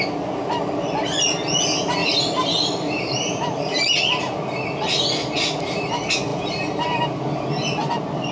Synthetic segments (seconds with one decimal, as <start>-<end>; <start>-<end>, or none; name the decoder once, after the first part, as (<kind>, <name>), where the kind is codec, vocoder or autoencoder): 2.0-4.0 (vocoder, BigVGAN v2); 6.3-7.9